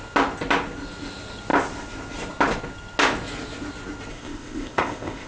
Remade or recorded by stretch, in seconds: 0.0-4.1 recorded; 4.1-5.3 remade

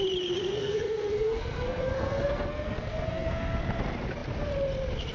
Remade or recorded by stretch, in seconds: 0.0-0.5 recorded; 0.5-3.6 remade; 3.6-5.1 recorded

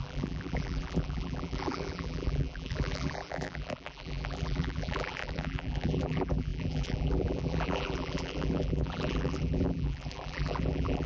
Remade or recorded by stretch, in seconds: 0.0-11.1 remade